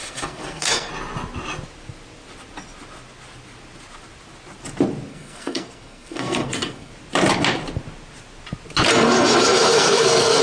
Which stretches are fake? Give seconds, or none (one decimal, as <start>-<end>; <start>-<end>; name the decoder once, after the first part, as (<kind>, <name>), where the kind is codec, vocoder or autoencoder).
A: 0.0-0.9 (codec, SNAC); 5.1-6.9; 9.5-10.4